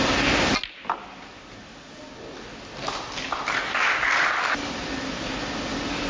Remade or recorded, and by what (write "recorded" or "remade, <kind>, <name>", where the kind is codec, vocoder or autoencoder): recorded